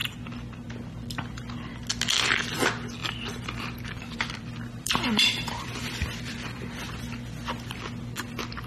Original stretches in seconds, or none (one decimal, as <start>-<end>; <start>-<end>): 0.0-3.0; 7.0-8.7